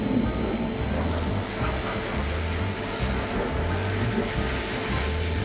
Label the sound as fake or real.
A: real